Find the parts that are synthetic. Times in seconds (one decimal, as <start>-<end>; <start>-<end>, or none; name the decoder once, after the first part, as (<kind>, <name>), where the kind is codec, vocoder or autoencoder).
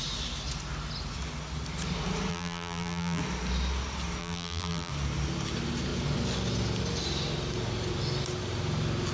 2.3-3.2 (vocoder, BigVGAN v2); 4.2-4.9